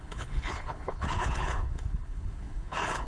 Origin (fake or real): fake